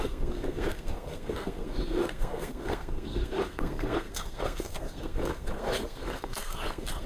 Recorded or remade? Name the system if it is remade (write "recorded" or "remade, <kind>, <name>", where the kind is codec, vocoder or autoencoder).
remade, codec, SNAC